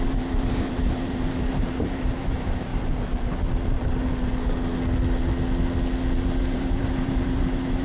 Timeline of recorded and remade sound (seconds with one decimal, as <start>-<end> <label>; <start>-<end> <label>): 0.0-2.7 remade; 2.7-6.4 recorded; 6.4-7.8 remade

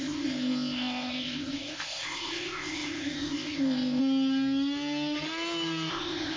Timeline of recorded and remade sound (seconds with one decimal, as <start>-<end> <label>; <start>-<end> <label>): 0.0-4.0 remade; 4.0-5.9 recorded; 5.9-6.4 remade

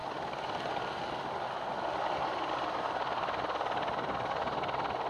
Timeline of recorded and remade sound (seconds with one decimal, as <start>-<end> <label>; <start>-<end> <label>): 0.0-5.1 recorded

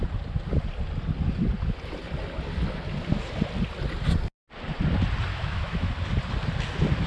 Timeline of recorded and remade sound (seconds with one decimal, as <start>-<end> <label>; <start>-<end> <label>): 0.0-5.3 recorded; 5.3-5.9 remade; 5.9-7.1 recorded

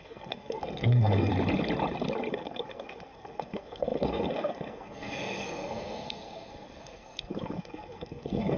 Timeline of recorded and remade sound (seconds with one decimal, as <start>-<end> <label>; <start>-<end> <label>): 0.0-1.3 remade; 1.3-2.3 recorded; 2.3-8.6 remade

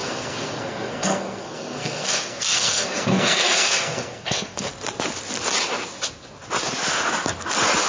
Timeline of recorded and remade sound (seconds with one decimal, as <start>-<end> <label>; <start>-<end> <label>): 0.0-4.7 remade; 4.7-7.9 recorded

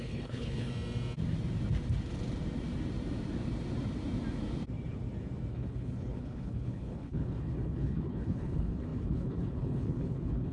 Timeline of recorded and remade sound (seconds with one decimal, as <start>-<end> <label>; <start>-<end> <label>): 0.0-0.7 remade; 0.7-5.5 recorded; 5.5-10.5 remade